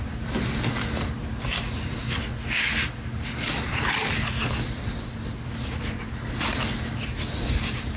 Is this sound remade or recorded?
recorded